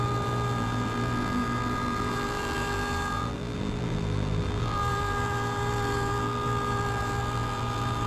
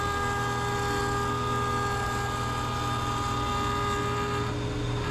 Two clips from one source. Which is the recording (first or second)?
second